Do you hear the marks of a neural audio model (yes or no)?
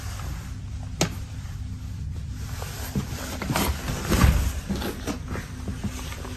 no